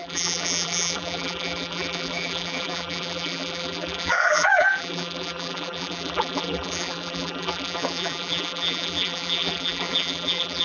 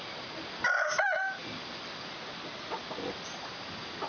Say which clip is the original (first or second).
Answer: second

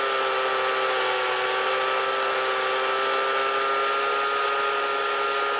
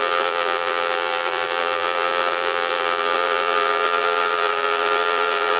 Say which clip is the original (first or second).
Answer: first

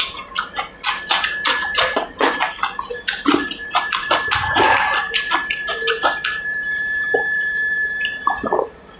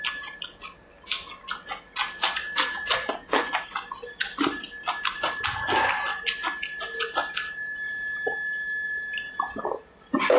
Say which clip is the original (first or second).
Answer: second